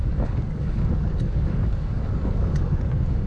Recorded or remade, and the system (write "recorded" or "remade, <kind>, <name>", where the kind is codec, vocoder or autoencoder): remade, codec, DAC